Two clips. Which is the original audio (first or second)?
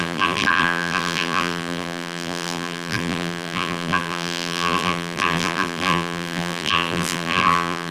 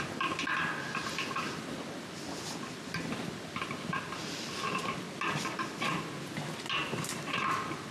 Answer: second